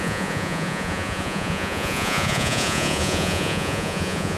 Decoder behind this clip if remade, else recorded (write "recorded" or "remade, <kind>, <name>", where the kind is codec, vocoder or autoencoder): remade, vocoder, Vocos